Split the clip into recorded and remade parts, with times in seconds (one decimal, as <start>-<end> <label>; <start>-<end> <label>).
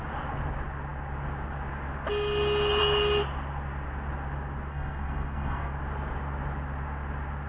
0.0-4.7 recorded; 4.7-5.7 remade; 5.7-7.5 recorded